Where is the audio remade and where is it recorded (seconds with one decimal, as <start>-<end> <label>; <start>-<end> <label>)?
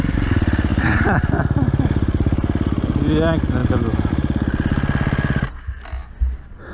0.0-0.7 recorded; 0.7-1.3 remade; 1.3-3.6 recorded; 3.6-4.1 remade; 4.1-6.7 recorded